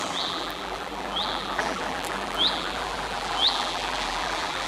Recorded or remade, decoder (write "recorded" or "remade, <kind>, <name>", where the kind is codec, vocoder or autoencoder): remade, vocoder, BigVGAN v2